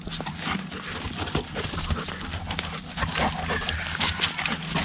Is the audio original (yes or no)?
yes